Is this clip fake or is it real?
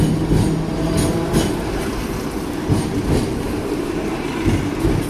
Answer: real